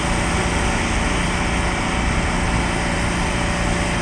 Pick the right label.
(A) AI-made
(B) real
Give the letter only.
B